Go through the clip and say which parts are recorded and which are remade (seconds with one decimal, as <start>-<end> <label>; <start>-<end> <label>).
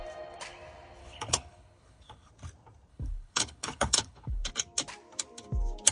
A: 0.0-1.0 recorded; 1.0-2.3 remade; 2.3-2.9 recorded; 2.9-4.5 remade; 4.5-5.9 recorded